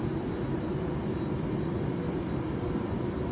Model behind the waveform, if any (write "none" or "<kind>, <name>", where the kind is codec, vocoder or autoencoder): none